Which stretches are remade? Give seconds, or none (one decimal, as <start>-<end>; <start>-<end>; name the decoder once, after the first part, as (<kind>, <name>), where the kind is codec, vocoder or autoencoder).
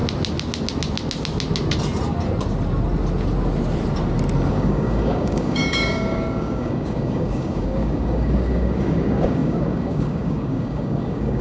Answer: 4.5-11.4 (codec, DAC)